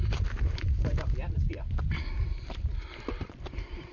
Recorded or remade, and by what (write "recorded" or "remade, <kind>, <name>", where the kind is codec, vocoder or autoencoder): recorded